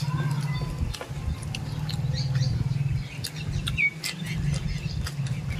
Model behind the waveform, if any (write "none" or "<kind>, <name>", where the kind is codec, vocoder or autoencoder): none